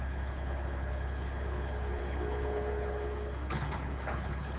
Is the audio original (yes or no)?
no